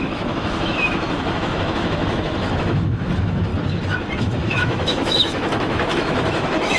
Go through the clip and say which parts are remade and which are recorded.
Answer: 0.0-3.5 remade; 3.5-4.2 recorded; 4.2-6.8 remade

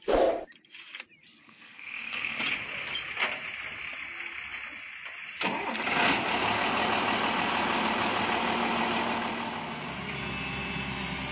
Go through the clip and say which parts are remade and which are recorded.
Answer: 0.0-1.4 recorded; 1.4-2.4 remade; 2.4-11.3 recorded

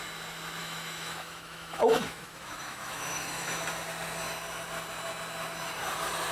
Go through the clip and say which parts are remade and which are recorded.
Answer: 0.0-0.6 recorded; 0.6-3.6 remade; 3.6-6.3 recorded

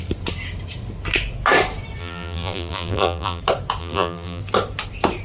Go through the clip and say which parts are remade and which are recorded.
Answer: 0.0-2.0 recorded; 2.0-3.4 remade; 3.4-3.8 recorded; 3.8-4.4 remade; 4.4-5.2 recorded

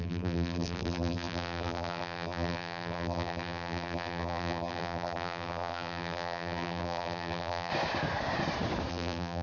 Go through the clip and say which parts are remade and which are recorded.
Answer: 0.0-7.7 remade; 7.7-8.9 recorded; 8.9-9.4 remade

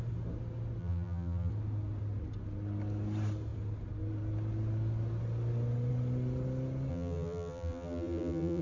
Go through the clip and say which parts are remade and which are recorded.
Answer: 0.0-0.8 recorded; 0.8-1.5 remade; 1.5-6.9 recorded; 6.9-8.6 remade